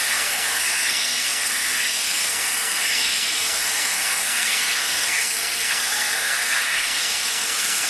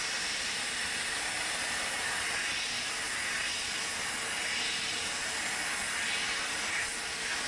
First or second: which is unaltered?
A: second